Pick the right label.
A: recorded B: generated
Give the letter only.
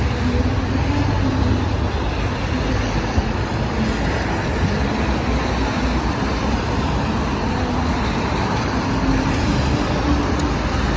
A